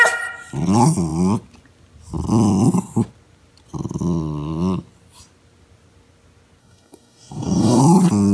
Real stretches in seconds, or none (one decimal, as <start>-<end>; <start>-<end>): 0.0-6.6; 7.8-8.3